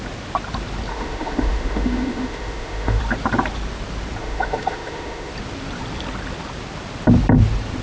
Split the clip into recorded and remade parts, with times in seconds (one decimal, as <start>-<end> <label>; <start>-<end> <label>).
0.0-0.9 recorded; 0.9-3.0 remade; 3.0-4.2 recorded; 4.2-5.3 remade; 5.3-7.8 recorded